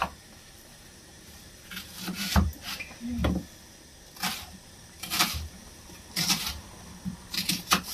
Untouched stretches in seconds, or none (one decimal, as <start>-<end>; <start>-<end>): 3.2-4.3